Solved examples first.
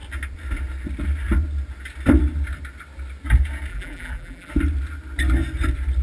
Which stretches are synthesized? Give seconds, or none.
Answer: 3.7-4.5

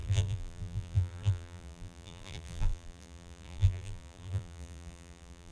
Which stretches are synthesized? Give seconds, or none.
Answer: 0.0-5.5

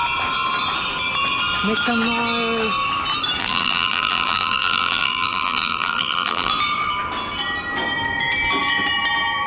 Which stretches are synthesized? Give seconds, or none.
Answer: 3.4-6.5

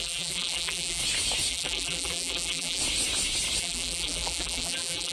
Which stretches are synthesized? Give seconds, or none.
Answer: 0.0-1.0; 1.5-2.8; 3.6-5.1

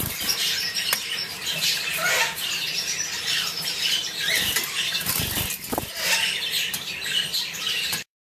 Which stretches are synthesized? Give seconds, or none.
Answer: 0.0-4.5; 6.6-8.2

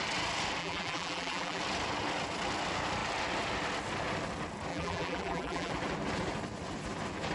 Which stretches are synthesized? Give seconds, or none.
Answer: 0.6-1.6; 4.7-5.7

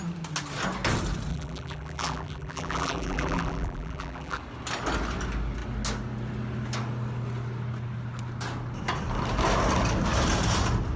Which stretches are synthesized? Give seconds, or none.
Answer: 1.3-4.4